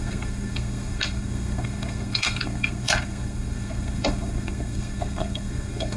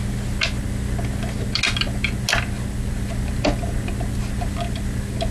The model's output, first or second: first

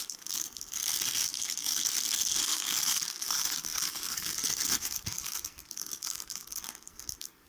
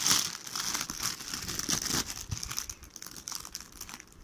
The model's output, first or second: first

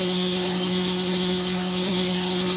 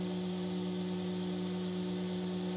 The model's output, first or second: first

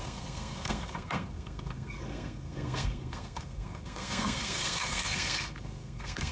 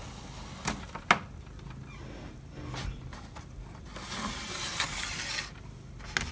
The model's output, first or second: first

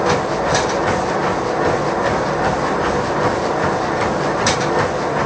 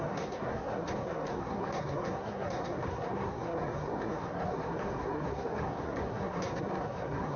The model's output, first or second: second